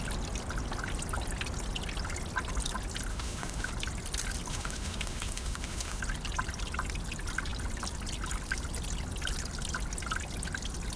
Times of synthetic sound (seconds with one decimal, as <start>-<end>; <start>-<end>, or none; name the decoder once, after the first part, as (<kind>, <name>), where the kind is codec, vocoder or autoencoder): 3.1-3.7 (autoencoder, DAC-VAE); 4.5-6.0